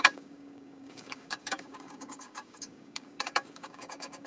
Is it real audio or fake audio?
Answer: fake